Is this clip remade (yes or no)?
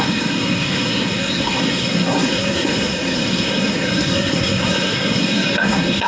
yes